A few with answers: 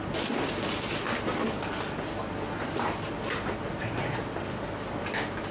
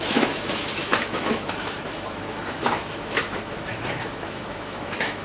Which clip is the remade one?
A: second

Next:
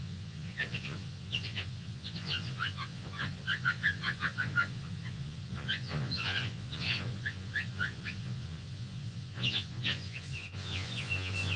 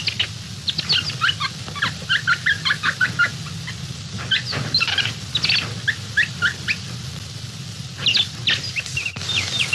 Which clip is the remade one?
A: first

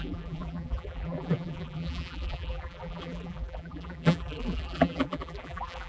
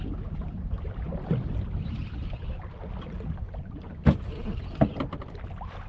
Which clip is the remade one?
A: first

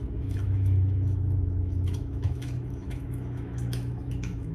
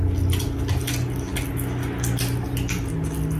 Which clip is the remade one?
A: first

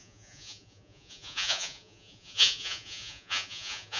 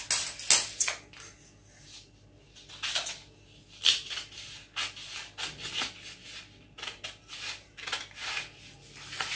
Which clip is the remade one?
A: first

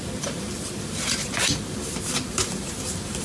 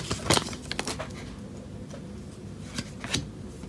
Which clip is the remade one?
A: first